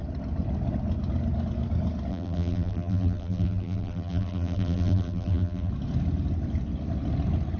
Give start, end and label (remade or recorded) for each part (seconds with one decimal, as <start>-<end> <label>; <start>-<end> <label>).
0.0-2.1 recorded; 2.1-5.7 remade; 5.7-7.6 recorded